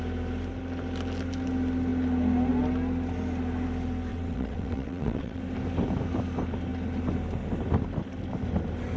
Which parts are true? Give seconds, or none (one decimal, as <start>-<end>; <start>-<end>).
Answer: 0.0-4.1; 5.4-9.0